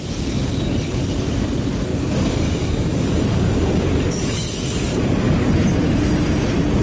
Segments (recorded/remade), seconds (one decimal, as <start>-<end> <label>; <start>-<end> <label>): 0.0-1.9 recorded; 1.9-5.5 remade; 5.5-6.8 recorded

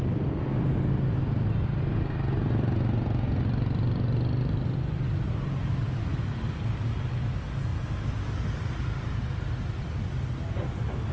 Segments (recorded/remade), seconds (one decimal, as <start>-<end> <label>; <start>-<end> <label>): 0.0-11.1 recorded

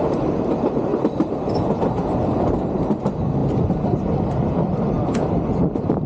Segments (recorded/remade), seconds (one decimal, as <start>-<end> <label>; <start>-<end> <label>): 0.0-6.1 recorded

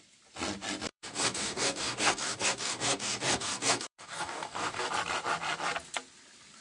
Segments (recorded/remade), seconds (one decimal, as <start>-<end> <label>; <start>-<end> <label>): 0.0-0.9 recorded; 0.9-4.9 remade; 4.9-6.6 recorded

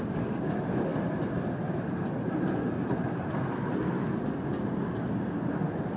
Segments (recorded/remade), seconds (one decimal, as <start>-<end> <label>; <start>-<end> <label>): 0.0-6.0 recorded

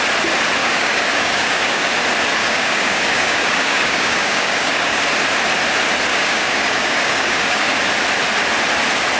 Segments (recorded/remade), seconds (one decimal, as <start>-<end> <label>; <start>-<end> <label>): 0.0-0.6 recorded; 0.6-1.9 remade; 1.9-2.4 recorded; 2.4-5.0 remade; 5.0-6.1 recorded; 6.1-7.8 remade; 7.8-9.2 recorded

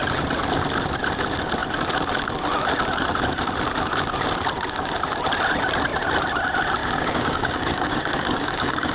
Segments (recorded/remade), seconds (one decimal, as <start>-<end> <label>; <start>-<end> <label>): 0.0-6.8 recorded; 6.8-8.9 remade